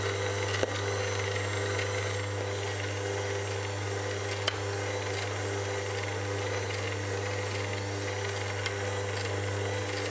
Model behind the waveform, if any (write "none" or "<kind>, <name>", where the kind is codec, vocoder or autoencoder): none